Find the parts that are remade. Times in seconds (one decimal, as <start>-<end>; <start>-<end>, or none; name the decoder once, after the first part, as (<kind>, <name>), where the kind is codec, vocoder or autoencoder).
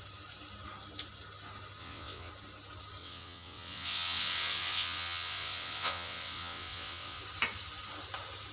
1.8-2.3 (vocoder, WaveNeXt); 3.0-7.2